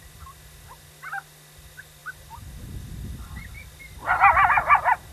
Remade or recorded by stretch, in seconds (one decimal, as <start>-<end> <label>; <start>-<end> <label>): 0.0-5.1 recorded